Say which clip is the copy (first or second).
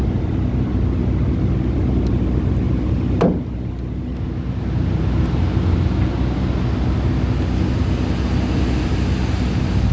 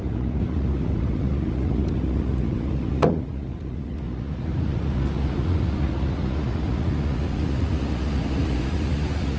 second